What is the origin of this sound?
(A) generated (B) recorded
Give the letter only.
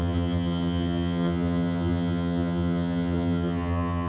A